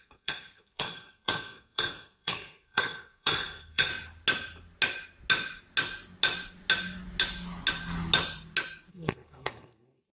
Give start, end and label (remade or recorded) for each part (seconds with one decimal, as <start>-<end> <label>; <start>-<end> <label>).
0.0-3.9 remade; 3.9-8.9 recorded; 8.9-10.2 remade